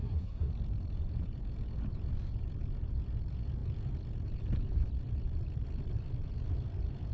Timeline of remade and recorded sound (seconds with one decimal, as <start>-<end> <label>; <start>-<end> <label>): 0.0-0.5 remade; 0.5-7.1 recorded